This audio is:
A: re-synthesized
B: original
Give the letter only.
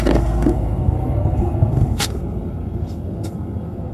A